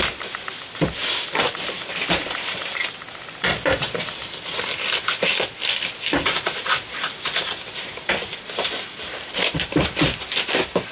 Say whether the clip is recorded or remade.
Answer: remade